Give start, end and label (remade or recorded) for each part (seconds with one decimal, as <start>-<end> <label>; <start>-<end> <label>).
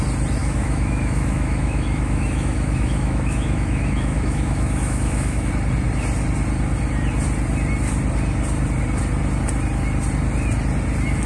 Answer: 0.0-0.4 recorded; 0.4-5.5 remade; 5.5-11.3 recorded